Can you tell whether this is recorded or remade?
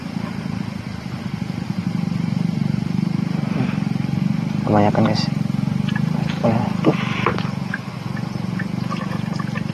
recorded